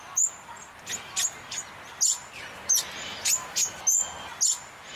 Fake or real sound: real